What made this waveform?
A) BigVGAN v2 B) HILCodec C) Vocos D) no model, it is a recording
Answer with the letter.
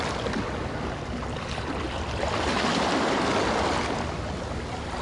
D